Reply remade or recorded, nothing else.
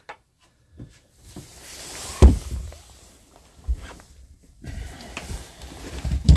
remade